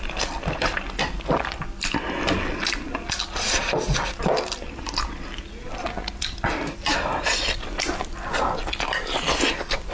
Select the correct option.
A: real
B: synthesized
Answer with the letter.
A